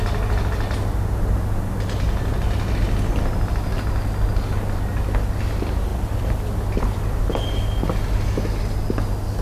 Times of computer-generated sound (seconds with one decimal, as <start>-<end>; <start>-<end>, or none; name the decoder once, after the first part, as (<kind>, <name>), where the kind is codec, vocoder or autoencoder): 5.9-7.2 (vocoder, BigVGAN v2)